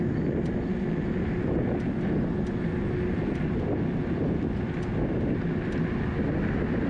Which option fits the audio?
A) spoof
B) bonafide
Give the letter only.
B